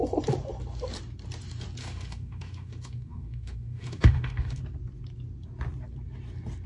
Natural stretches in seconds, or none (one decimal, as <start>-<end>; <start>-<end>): 0.0-1.8; 4.6-6.7